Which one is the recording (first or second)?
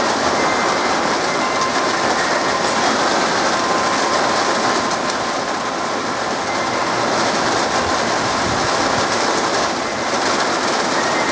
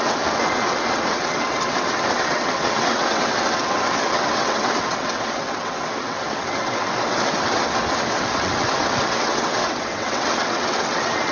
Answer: first